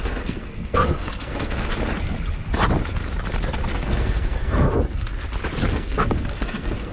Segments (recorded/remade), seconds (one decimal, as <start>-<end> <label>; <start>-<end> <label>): 0.0-1.7 remade; 1.7-3.7 recorded; 3.7-5.1 remade; 5.1-5.7 recorded; 5.7-6.9 remade